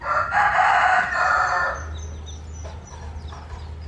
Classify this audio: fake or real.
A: real